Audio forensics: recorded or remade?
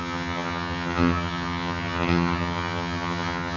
remade